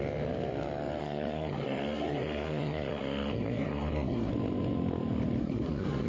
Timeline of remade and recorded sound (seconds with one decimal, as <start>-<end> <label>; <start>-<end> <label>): 0.0-1.0 recorded; 1.0-4.3 remade; 4.3-5.4 recorded; 5.4-6.1 remade